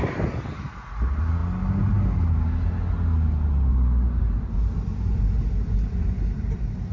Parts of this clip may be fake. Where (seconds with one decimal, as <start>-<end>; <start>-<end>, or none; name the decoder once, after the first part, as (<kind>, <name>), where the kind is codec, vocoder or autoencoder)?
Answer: none